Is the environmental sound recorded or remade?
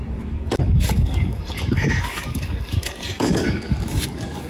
remade